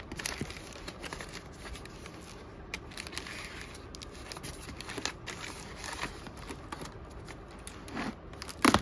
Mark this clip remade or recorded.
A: recorded